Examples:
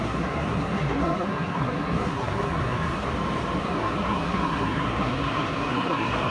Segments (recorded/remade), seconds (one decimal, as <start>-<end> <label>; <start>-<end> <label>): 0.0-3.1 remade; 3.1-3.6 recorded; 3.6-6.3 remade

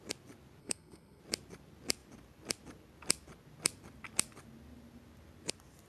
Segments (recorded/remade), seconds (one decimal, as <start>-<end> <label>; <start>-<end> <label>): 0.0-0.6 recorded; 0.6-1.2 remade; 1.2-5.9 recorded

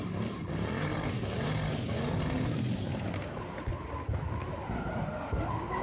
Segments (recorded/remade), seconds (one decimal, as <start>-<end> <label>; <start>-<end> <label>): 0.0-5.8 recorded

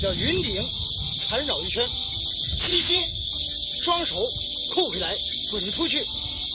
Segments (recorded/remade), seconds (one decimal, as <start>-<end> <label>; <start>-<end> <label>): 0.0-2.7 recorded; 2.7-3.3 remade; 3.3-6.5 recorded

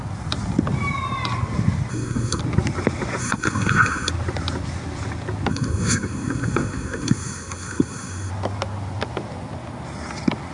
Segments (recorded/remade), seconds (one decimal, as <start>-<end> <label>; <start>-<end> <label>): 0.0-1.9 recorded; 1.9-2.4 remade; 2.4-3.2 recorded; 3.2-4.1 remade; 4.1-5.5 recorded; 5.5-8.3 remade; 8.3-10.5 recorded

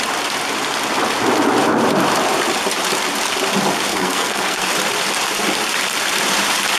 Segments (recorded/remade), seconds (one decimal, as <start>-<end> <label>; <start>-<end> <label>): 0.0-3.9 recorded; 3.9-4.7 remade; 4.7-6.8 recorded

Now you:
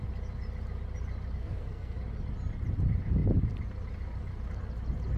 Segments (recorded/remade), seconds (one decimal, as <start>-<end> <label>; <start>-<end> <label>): 0.0-1.4 recorded; 1.4-2.0 remade; 2.0-5.2 recorded